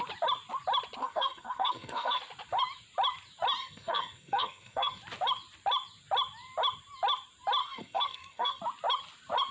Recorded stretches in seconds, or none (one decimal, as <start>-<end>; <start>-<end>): 0.0-1.0; 2.2-3.6; 5.0-7.6; 8.6-9.5

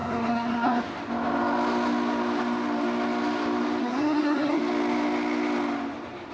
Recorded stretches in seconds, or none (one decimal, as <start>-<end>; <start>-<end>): 0.8-3.8; 4.6-6.3

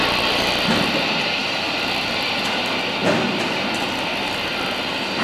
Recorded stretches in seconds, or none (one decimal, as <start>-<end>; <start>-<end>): 0.0-5.2